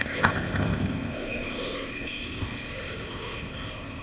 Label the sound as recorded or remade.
remade